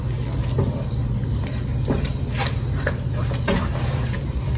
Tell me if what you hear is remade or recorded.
recorded